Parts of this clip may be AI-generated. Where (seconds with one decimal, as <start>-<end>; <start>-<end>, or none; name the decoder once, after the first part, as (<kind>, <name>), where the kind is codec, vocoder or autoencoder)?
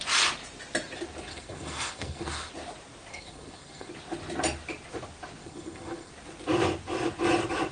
1.3-2.5 (codec, SNAC); 3.1-3.9; 5.4-6.1